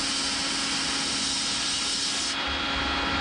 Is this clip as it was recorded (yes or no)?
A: yes